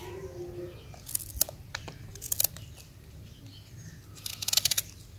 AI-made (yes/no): no